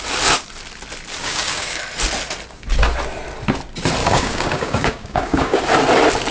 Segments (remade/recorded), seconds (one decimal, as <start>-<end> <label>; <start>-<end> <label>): 0.0-1.2 recorded; 1.2-1.8 remade; 1.8-4.0 recorded; 4.0-5.6 remade; 5.6-6.3 recorded